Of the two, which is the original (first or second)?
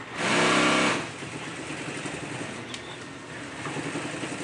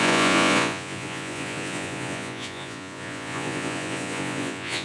first